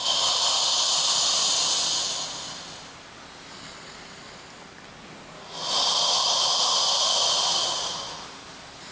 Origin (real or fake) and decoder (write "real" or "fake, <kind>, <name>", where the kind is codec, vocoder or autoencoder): real